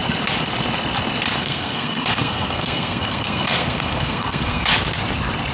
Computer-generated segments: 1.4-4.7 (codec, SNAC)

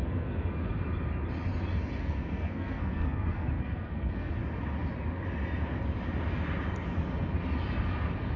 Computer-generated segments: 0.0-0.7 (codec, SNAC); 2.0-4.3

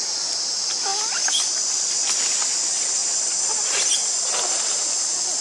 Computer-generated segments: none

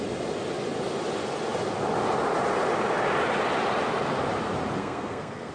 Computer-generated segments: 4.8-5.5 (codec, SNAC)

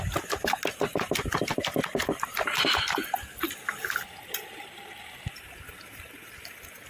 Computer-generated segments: none

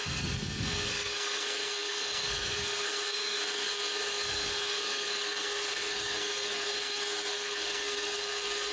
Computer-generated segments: 0.0-8.7 (codec, SNAC)

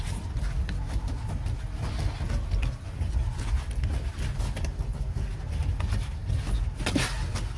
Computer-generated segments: none

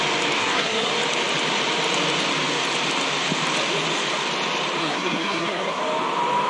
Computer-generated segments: 0.4-0.9 (codec, SNAC); 4.8-5.8